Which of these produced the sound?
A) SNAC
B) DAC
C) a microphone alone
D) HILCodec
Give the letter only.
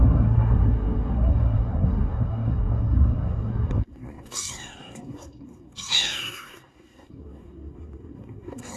A